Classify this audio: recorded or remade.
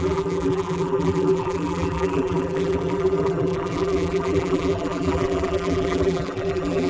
remade